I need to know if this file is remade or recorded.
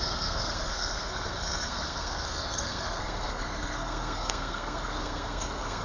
remade